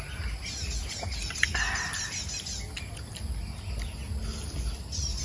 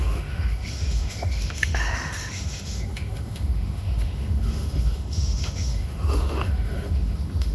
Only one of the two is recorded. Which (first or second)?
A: first